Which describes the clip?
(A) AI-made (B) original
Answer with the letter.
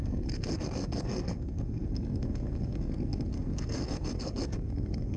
A